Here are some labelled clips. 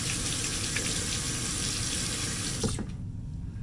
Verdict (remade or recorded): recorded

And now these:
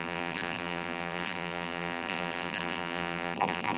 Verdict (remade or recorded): remade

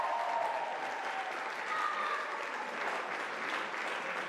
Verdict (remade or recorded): remade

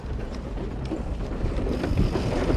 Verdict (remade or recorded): recorded